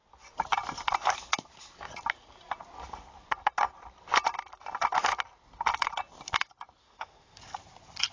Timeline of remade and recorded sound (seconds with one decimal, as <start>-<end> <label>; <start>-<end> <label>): 0.0-6.8 recorded; 6.8-7.4 remade; 7.4-8.1 recorded